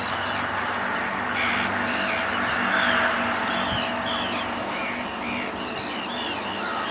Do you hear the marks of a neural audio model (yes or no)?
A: no